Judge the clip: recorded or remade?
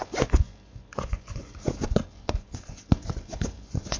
remade